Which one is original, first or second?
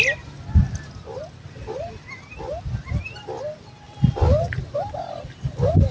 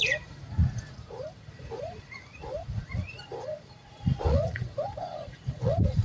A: first